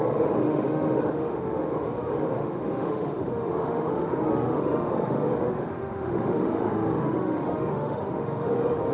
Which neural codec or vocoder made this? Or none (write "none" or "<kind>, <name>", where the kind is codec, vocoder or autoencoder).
autoencoder, DAC-VAE